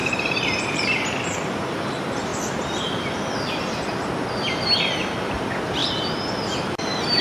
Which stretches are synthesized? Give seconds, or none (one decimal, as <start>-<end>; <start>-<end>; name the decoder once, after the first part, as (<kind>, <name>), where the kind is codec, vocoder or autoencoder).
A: 0.0-2.3 (vocoder, BigVGAN v2); 4.8-5.8; 6.6-7.2